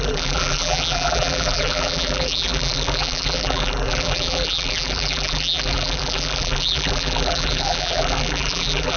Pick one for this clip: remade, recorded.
remade